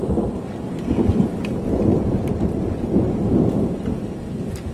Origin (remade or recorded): recorded